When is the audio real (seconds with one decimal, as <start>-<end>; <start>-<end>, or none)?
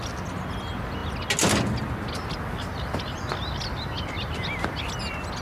0.0-5.4